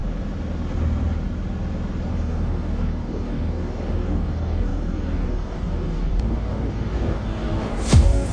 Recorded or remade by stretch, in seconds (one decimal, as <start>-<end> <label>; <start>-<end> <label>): 0.0-2.1 recorded; 2.1-8.3 remade